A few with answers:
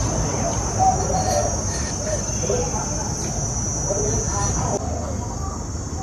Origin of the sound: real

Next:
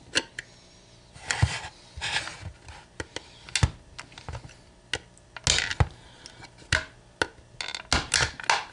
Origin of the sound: real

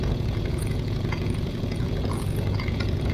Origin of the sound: fake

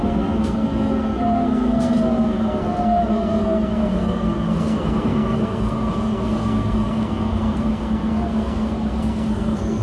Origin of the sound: fake